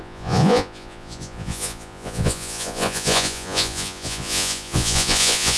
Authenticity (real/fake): fake